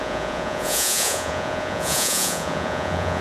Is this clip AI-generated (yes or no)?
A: yes